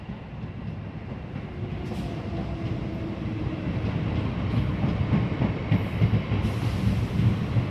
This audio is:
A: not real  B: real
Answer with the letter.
B